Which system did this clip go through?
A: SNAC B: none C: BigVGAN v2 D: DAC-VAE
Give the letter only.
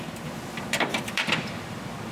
C